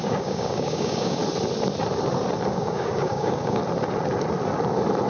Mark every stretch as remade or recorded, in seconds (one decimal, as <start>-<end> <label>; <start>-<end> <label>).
0.0-1.2 remade; 1.2-2.5 recorded; 2.5-3.6 remade; 3.6-5.1 recorded